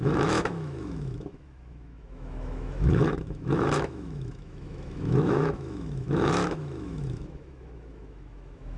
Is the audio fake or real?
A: fake